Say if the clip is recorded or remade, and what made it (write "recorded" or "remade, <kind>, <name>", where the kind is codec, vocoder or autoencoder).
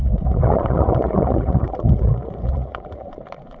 remade, vocoder, Vocos